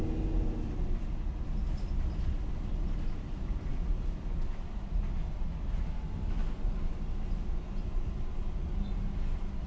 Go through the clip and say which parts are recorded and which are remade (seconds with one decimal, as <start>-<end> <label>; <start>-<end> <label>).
0.0-9.7 recorded